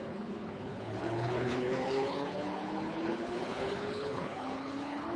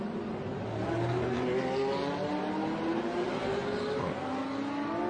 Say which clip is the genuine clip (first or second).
second